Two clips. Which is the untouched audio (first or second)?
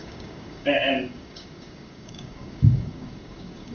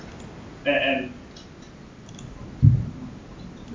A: second